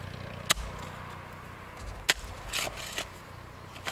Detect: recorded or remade recorded